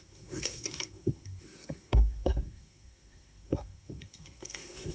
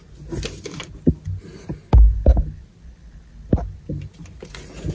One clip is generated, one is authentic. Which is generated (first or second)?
first